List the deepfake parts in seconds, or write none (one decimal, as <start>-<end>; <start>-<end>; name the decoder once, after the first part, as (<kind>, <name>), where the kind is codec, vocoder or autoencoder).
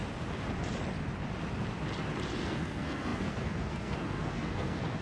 2.4-5.0 (codec, SNAC)